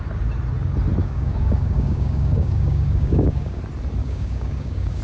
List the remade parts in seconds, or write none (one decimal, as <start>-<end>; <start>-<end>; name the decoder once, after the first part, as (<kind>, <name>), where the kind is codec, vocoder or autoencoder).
1.0-3.6 (codec, DAC); 4.0-5.0